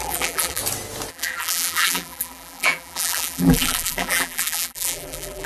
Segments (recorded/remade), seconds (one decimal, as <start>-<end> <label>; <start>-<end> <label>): 0.0-0.6 remade; 0.6-1.1 recorded; 1.1-5.5 remade